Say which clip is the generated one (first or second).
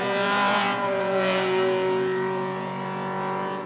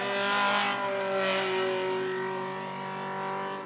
first